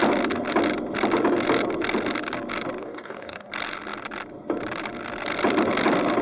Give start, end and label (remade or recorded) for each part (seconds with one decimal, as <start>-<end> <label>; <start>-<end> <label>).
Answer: 0.0-2.8 recorded; 2.8-3.5 remade; 3.5-6.2 recorded